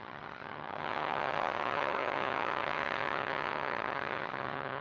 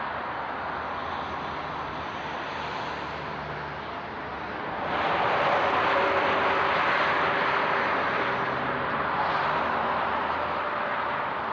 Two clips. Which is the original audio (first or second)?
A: second